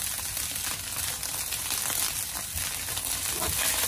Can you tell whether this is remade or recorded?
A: recorded